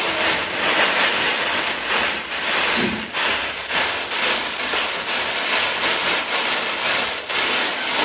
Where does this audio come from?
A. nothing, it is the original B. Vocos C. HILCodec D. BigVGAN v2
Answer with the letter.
D